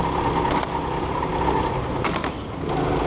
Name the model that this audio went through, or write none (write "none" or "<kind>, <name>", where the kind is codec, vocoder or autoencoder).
none